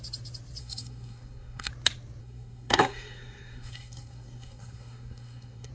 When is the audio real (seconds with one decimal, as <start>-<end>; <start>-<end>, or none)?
0.0-0.6; 1.7-2.2